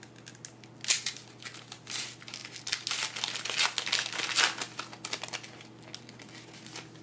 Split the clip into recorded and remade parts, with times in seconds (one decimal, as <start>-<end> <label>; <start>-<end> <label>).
0.0-7.0 recorded